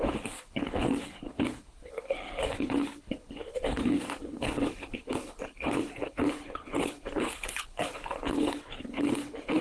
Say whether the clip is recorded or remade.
remade